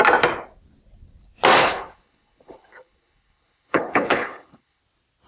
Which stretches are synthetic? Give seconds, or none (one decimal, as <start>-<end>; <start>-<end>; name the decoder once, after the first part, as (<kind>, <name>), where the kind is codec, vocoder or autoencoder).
1.6-4.8 (codec, HILCodec)